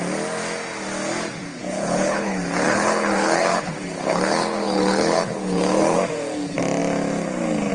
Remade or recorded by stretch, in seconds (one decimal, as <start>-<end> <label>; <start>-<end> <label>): 0.0-1.5 recorded; 1.5-6.0 remade; 6.0-7.7 recorded